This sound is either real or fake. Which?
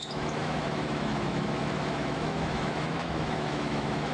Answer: fake